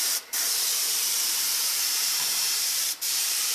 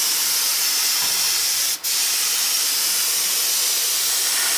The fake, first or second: first